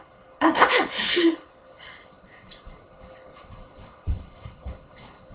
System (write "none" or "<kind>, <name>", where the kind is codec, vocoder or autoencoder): codec, HILCodec